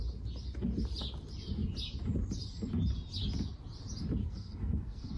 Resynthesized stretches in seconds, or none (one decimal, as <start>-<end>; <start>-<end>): 4.2-5.2